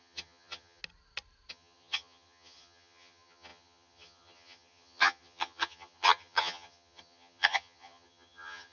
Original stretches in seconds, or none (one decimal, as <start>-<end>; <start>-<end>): 0.8-1.5